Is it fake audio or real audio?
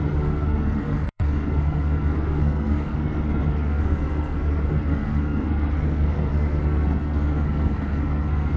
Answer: fake